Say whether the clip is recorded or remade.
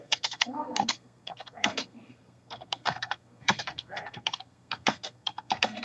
remade